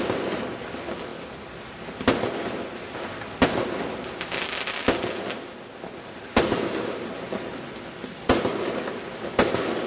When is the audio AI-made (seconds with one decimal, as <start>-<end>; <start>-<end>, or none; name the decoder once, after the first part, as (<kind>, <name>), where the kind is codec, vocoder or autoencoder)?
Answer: none

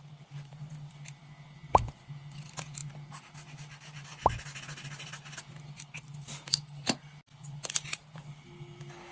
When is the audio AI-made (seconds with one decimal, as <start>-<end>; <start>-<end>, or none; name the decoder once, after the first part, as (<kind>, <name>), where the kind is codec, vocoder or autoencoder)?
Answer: none

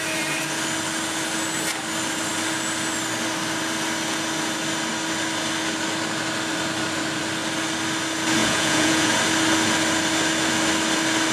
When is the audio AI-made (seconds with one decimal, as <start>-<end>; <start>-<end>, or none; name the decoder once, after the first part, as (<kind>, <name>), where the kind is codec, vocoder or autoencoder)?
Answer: 8.4-9.1 (vocoder, Vocos)

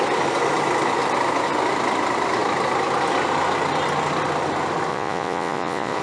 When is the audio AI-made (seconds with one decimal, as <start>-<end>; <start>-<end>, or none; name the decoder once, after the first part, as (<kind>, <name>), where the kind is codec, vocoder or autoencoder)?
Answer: 4.9-6.0 (vocoder, Vocos)

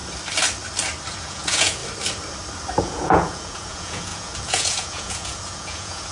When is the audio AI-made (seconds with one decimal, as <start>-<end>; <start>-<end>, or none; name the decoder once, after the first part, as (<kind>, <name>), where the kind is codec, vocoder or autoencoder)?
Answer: 1.2-1.8 (vocoder, Vocos); 2.8-6.1

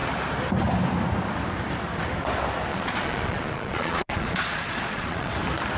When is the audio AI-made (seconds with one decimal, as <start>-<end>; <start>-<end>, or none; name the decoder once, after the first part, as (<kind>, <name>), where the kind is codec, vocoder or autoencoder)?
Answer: 2.7-5.3 (vocoder, Vocos)